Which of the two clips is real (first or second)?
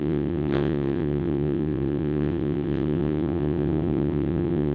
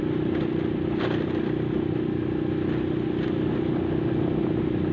second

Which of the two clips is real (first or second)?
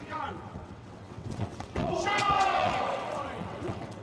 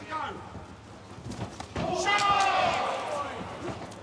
second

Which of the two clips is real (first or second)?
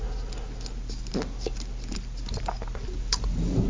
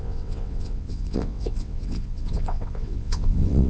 first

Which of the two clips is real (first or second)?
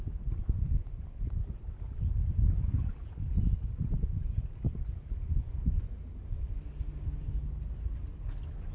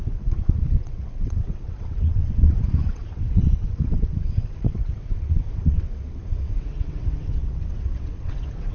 first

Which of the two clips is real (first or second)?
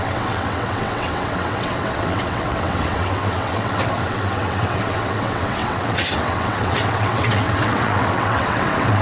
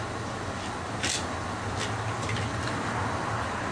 second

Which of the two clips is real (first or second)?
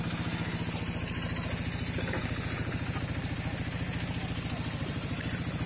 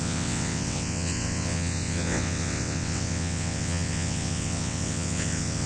first